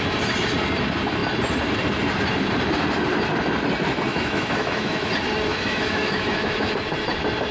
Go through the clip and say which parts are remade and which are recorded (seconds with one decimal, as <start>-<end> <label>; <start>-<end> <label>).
0.0-4.1 recorded; 4.1-5.1 remade; 5.1-5.5 recorded; 5.5-6.7 remade; 6.7-7.5 recorded